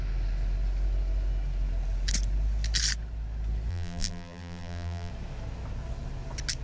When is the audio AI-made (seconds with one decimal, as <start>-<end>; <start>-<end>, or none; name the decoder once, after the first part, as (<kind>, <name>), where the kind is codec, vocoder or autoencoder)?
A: 3.7-5.1 (vocoder, BigVGAN v2)